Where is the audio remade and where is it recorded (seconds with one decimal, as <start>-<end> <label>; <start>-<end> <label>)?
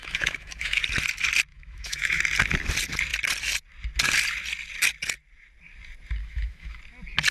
0.0-0.8 remade; 0.8-1.5 recorded; 1.5-2.2 remade; 2.2-6.2 recorded; 6.2-6.8 remade; 6.8-7.3 recorded